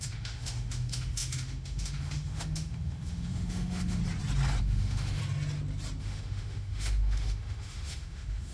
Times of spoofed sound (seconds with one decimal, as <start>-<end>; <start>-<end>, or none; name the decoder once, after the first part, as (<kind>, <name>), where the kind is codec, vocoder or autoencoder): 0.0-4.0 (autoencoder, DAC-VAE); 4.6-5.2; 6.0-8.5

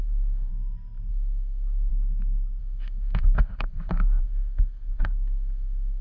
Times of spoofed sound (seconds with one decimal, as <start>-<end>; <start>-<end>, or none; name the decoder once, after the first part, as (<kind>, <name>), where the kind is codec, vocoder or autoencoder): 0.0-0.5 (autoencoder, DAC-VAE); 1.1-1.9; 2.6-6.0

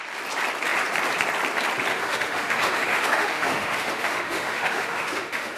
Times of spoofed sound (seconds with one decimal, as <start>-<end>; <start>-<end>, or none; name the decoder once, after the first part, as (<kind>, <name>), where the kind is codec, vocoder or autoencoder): 1.9-5.6 (autoencoder, DAC-VAE)